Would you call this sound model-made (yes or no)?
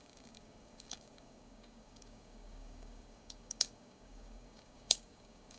yes